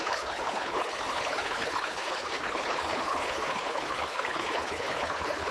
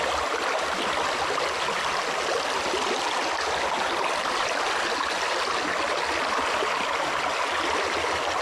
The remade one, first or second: first